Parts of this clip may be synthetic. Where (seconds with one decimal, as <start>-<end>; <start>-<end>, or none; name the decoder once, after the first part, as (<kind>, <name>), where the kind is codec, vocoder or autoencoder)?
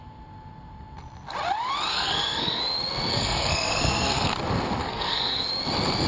1.9-2.6 (codec, SNAC); 3.1-4.3; 4.8-5.5